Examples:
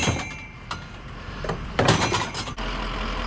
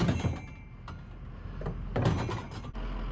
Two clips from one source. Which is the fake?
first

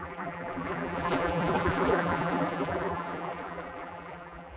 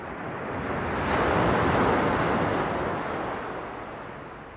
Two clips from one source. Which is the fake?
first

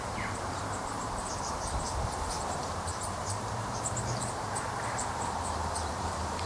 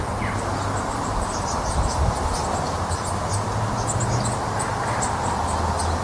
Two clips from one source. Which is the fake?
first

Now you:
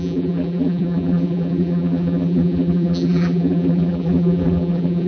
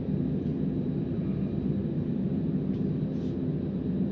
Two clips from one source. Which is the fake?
first